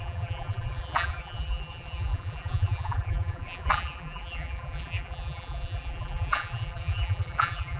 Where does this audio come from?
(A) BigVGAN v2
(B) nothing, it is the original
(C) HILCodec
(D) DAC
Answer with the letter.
A